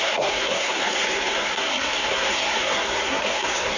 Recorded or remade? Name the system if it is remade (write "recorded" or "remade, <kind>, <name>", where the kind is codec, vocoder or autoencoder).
remade, codec, SNAC